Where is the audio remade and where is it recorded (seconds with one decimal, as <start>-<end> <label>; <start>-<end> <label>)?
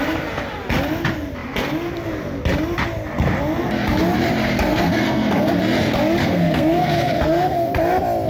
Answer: 0.0-4.7 recorded; 4.7-5.5 remade; 5.5-6.2 recorded; 6.2-7.8 remade; 7.8-8.3 recorded